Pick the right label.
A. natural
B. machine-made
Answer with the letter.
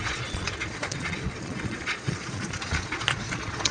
B